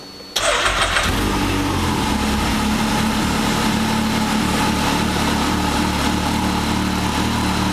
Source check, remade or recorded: recorded